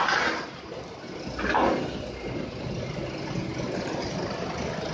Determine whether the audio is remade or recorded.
recorded